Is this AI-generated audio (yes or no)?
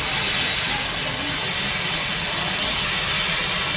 no